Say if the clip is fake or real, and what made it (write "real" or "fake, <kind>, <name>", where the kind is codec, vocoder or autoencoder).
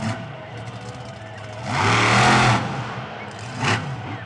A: real